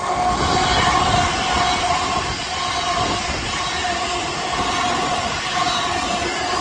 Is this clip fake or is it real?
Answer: real